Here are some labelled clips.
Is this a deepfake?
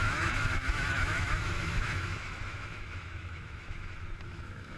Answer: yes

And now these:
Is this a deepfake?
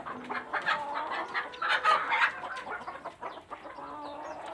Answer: no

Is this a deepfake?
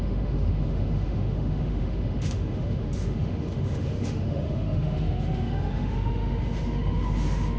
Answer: yes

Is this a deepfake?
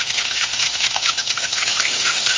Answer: yes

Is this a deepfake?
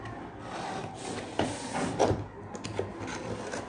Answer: no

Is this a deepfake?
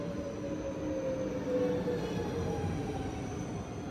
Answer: no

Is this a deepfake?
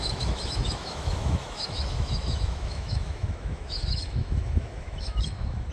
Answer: yes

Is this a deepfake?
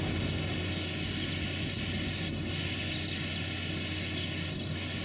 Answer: no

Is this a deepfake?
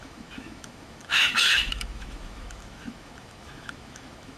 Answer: yes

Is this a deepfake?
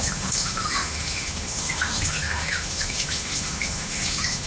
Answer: yes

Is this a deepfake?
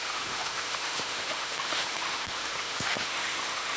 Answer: yes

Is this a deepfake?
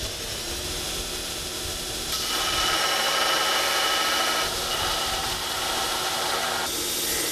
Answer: no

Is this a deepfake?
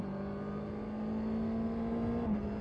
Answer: no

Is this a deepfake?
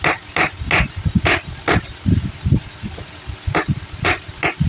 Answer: no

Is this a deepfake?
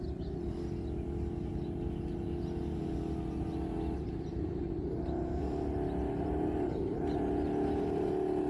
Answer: no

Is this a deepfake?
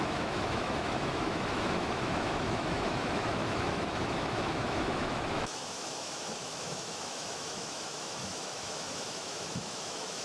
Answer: yes